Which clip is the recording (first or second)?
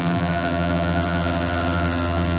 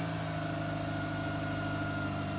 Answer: second